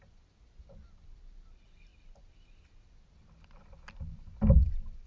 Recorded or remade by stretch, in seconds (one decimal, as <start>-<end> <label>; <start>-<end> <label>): 0.0-5.1 recorded